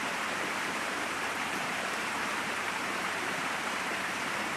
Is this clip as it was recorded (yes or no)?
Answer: no